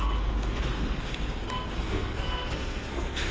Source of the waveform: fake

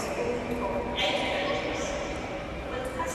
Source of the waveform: real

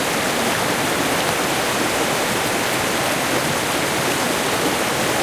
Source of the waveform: real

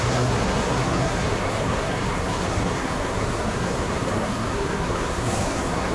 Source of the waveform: fake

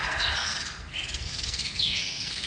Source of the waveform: fake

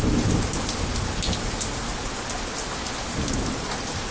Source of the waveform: real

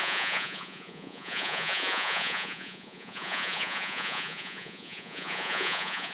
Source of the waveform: fake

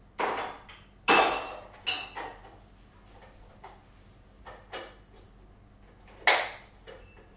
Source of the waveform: real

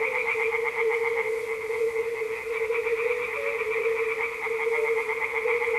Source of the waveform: real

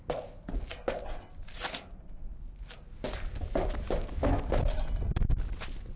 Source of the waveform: real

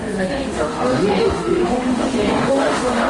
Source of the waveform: fake